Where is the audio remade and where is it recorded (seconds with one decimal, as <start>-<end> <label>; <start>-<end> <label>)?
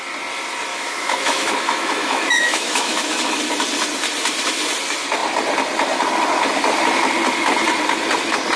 0.0-0.7 recorded; 0.7-3.4 remade; 3.4-8.6 recorded